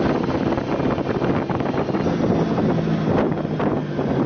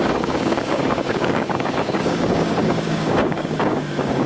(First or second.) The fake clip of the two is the second